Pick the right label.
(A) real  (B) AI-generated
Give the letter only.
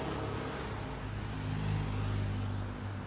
A